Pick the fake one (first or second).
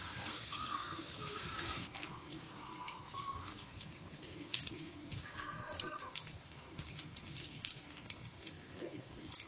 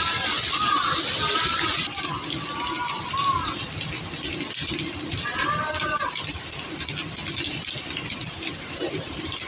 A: first